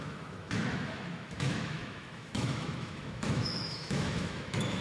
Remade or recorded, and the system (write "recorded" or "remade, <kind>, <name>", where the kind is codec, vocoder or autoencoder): remade, autoencoder, DAC-VAE